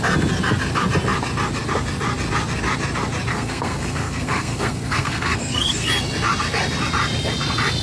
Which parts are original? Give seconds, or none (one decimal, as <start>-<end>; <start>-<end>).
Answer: 0.0-3.3; 5.9-7.8